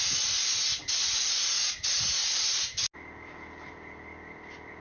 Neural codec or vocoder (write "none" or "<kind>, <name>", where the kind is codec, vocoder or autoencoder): none